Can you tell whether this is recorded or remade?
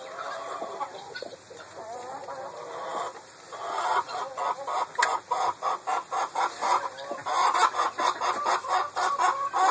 recorded